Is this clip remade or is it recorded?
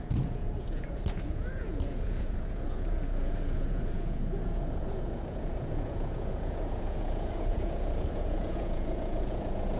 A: remade